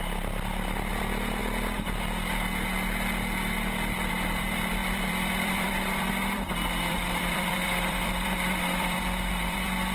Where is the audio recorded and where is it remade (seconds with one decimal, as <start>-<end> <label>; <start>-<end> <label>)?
0.0-1.4 remade; 1.4-4.1 recorded; 4.1-9.9 remade

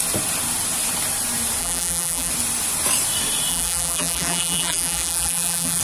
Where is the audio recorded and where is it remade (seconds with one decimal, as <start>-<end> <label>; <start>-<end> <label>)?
0.0-1.6 recorded; 1.6-2.3 remade; 2.3-3.5 recorded; 3.5-5.8 remade

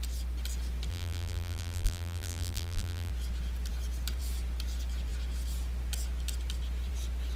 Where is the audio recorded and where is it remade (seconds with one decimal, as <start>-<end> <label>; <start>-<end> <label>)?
0.0-0.9 recorded; 0.9-3.1 remade; 3.1-7.4 recorded

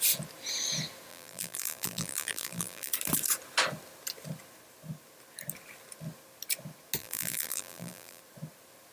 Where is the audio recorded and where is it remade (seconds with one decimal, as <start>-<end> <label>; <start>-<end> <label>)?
0.0-1.1 recorded; 1.1-2.9 remade; 2.9-7.0 recorded; 7.0-8.2 remade; 8.2-8.9 recorded